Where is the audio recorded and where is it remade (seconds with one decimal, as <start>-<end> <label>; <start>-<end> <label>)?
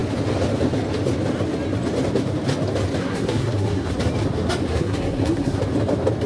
0.0-3.0 recorded; 3.0-3.9 remade; 3.9-4.7 recorded; 4.7-5.6 remade; 5.6-6.3 recorded